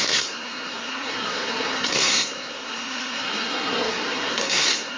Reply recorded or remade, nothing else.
remade